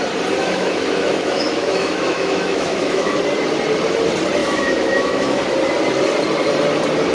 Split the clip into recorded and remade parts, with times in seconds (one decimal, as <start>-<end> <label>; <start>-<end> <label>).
0.0-0.4 recorded; 0.4-3.2 remade; 3.2-4.4 recorded; 4.4-5.4 remade; 5.4-7.1 recorded

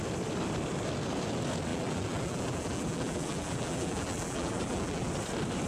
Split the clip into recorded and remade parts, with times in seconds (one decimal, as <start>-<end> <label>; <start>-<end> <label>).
0.0-1.7 recorded; 1.7-5.1 remade; 5.1-5.7 recorded

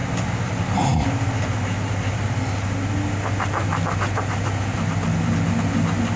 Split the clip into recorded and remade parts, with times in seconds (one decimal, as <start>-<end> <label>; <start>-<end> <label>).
0.0-6.2 recorded

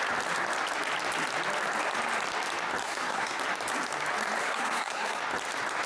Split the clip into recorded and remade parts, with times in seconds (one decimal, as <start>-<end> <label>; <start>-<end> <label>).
0.0-2.8 recorded; 2.8-3.4 remade; 3.4-4.4 recorded; 4.4-5.2 remade; 5.2-5.9 recorded

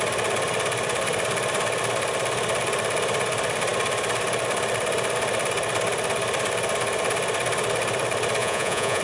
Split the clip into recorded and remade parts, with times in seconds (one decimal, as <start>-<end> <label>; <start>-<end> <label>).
0.0-8.4 recorded; 8.4-9.0 remade

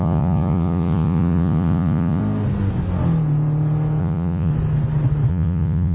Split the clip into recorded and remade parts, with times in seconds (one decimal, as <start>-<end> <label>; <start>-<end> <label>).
0.0-2.2 remade; 2.2-4.0 recorded; 4.0-4.5 remade; 4.5-5.3 recorded; 5.3-5.9 remade

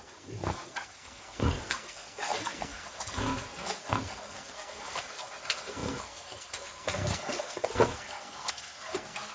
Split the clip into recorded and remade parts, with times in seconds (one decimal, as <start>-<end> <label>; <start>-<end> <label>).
0.0-9.3 remade

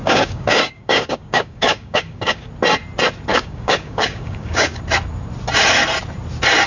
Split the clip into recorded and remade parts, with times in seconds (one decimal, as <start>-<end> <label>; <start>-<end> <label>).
0.0-2.5 remade; 2.5-3.3 recorded; 3.3-4.8 remade; 4.8-6.7 recorded